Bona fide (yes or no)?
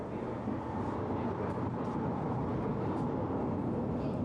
yes